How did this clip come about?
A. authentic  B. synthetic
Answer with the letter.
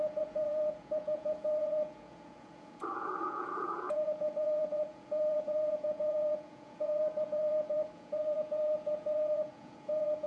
B